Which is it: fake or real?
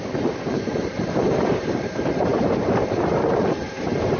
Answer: fake